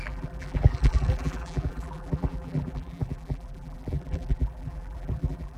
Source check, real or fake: fake